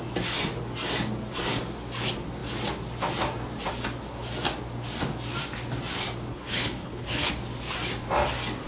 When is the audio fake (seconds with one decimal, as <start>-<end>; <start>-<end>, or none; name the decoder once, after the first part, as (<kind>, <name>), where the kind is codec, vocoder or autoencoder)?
6.3-7.3 (codec, HILCodec)